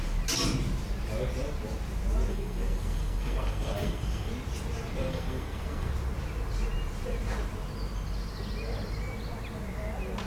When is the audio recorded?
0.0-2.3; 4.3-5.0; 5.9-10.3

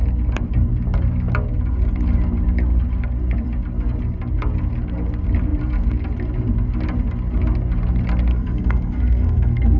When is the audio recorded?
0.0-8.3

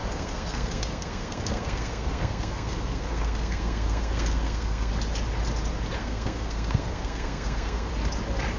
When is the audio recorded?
4.9-6.0; 7.9-8.6

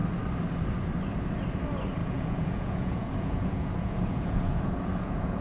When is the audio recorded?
0.0-2.0

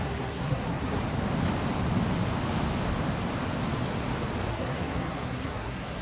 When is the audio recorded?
1.0-4.5

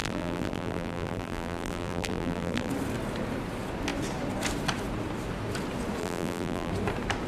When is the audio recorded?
2.7-6.0; 6.7-7.3

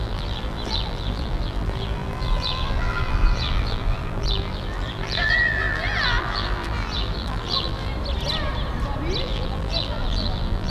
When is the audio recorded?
7.9-9.2

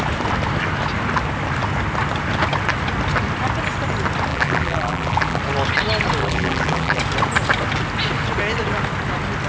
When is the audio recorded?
0.0-4.3; 5.4-6.2; 7.0-9.5